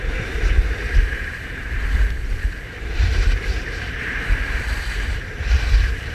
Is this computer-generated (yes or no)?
yes